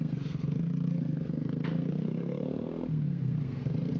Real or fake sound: fake